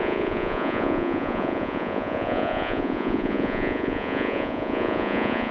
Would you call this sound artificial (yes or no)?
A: yes